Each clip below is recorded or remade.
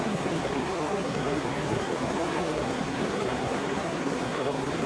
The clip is remade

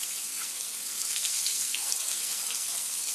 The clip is remade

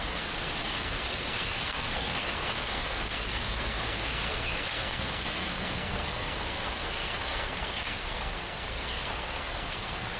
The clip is remade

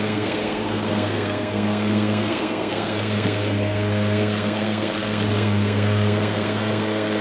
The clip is remade